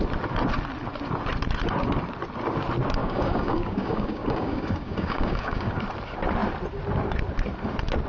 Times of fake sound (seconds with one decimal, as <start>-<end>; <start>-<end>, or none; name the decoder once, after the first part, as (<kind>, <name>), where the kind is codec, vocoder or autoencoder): 3.0-5.8 (codec, DAC)

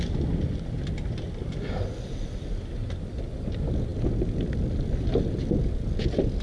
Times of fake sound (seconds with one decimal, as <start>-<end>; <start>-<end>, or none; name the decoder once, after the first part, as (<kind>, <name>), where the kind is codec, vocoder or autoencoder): none

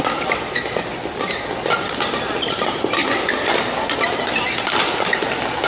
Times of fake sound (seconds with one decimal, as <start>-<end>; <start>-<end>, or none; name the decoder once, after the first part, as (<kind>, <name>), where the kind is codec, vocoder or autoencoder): none